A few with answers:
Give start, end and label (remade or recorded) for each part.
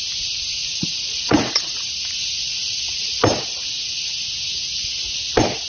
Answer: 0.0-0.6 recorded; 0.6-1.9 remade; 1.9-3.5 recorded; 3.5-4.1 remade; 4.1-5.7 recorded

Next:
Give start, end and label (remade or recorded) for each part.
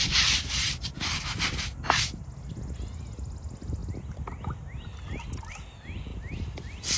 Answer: 0.0-1.9 remade; 1.9-7.0 recorded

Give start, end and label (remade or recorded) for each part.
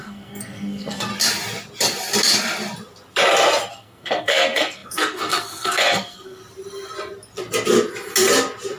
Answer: 0.0-1.1 remade; 1.1-3.7 recorded; 3.7-6.4 remade; 6.4-8.8 recorded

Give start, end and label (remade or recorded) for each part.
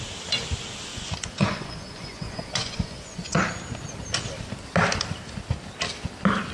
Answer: 0.0-0.9 recorded; 0.9-3.4 remade; 3.4-6.5 recorded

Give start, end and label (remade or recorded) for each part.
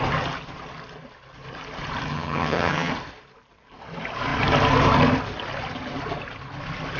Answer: 0.0-2.1 recorded; 2.1-2.9 remade; 2.9-7.0 recorded